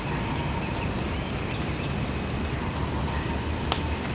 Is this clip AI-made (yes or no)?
no